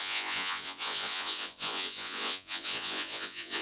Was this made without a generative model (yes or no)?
no